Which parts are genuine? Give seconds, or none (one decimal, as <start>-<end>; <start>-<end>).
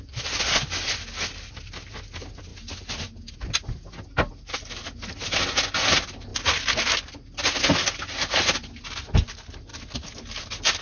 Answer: 0.0-10.8